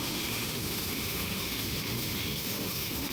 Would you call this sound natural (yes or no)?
no